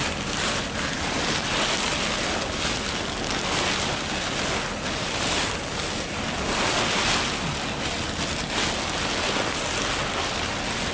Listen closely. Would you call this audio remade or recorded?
recorded